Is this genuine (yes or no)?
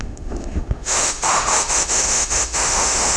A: no